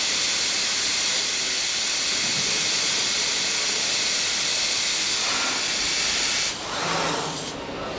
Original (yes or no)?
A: yes